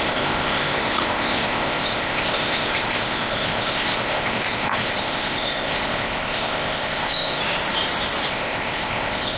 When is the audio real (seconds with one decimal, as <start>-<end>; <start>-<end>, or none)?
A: 7.4-8.3